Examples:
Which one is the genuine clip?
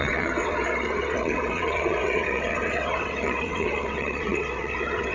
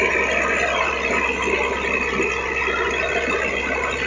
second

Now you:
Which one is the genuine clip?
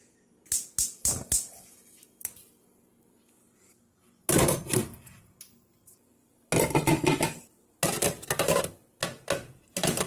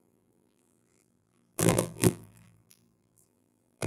first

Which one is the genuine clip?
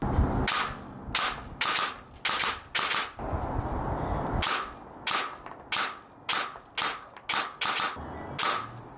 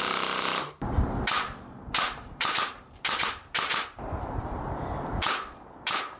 first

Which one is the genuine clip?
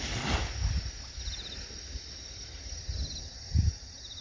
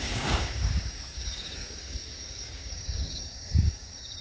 first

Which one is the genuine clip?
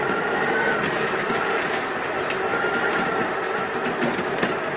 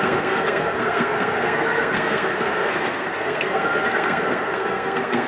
first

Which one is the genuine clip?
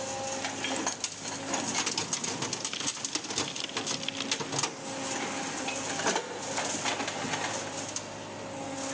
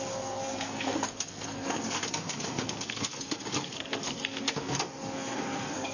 first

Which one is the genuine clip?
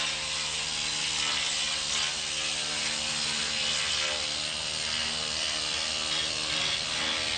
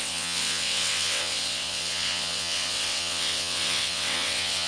first